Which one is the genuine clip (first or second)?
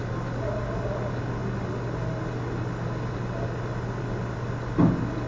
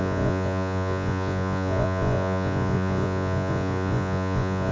first